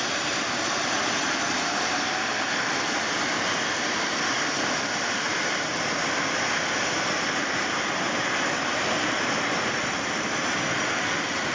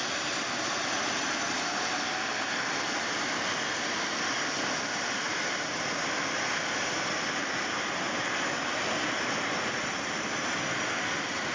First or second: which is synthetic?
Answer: first